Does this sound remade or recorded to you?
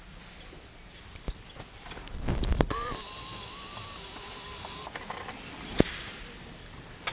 remade